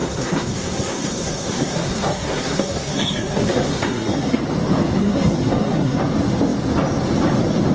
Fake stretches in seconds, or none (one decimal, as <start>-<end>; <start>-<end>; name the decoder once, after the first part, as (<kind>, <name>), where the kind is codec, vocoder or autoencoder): 0.0-4.4 (codec, SNAC); 5.0-6.0